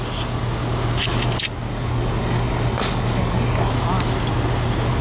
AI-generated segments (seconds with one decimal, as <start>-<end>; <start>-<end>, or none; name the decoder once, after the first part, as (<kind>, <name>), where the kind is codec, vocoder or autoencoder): 1.7-3.7 (codec, DAC)